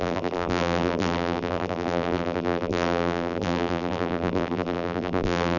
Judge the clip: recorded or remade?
remade